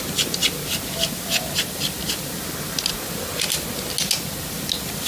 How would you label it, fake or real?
real